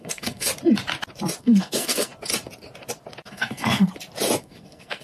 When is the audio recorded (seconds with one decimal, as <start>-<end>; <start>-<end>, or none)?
0.5-1.4; 2.1-3.3; 3.9-4.4